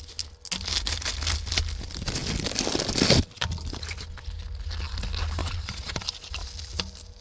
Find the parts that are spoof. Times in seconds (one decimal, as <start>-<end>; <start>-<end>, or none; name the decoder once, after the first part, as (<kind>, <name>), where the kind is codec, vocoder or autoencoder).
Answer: 5.4-6.0 (vocoder, Vocos)